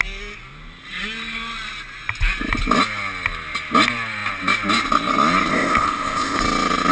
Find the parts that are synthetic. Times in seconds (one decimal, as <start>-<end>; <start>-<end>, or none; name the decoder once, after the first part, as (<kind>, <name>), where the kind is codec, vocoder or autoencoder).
5.5-6.4 (codec, ZipCodec)